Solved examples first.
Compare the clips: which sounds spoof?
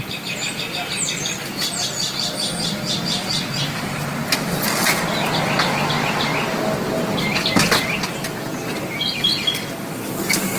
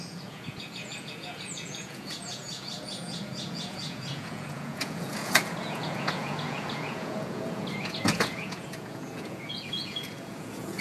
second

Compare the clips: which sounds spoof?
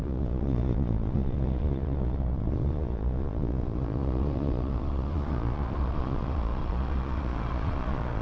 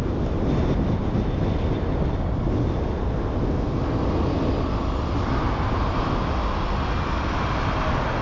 first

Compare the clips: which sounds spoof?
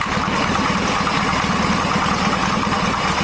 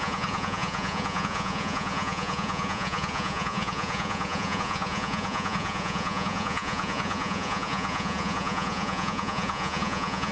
second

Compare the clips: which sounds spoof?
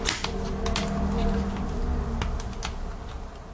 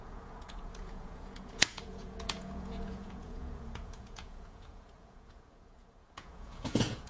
second